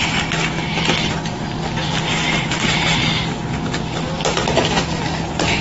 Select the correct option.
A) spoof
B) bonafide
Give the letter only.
A